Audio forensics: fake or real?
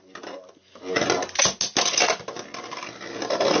real